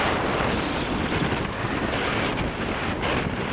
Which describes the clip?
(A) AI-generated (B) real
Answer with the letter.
B